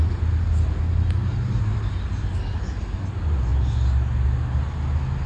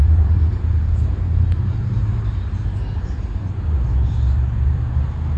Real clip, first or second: first